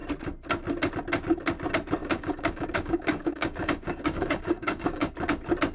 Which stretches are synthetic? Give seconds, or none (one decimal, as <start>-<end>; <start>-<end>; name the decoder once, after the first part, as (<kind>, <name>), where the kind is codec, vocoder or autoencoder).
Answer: 2.0-5.1 (codec, DAC)